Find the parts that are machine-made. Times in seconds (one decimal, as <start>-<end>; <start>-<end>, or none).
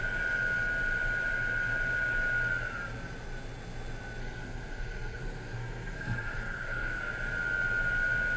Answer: 4.2-7.0